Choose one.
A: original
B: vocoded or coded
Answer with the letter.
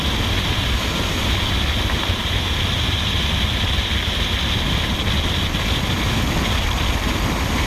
A